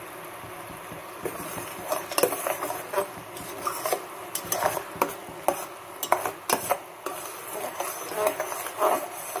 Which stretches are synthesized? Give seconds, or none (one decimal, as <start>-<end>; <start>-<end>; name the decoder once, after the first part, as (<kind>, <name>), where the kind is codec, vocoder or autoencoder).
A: 1.0-2.0 (vocoder, BigVGAN v2)